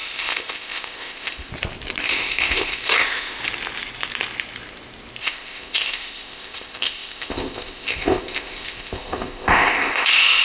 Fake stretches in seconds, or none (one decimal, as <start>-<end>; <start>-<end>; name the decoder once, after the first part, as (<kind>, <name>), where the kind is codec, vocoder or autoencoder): 0.0-1.5 (codec, ZipCodec); 2.0-3.4; 5.2-10.4